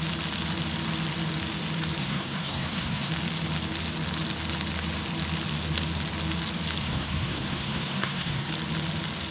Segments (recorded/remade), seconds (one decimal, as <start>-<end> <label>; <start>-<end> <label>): 0.0-2.0 recorded; 2.0-3.1 remade; 3.1-6.8 recorded; 6.8-8.5 remade; 8.5-9.3 recorded